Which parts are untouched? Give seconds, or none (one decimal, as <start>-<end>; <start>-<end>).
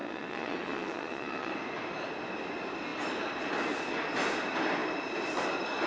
1.5-5.9